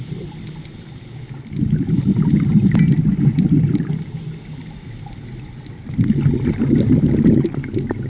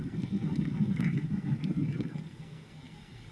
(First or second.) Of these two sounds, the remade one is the second